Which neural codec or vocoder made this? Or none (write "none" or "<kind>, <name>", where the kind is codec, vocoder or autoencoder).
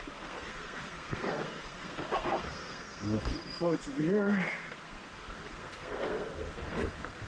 codec, SNAC